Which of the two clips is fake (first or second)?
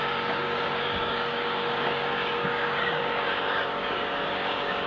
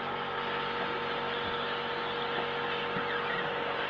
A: first